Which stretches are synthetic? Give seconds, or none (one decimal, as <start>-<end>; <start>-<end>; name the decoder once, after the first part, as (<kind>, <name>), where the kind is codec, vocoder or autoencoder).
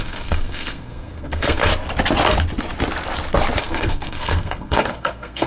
0.0-1.7 (codec, SNAC); 3.6-5.5